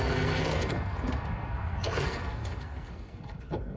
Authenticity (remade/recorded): remade